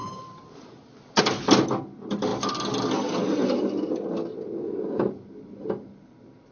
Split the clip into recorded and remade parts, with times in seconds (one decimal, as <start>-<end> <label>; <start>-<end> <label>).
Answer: 0.0-1.2 remade; 1.2-6.5 recorded